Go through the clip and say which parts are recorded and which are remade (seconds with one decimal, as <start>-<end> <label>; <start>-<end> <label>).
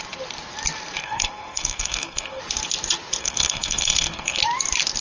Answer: 0.0-1.0 recorded; 1.0-2.4 remade; 2.4-3.2 recorded; 3.2-4.4 remade; 4.4-5.0 recorded